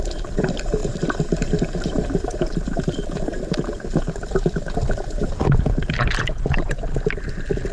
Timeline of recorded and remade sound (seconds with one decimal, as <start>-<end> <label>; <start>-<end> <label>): 0.0-0.8 recorded; 0.8-2.9 remade; 2.9-7.7 recorded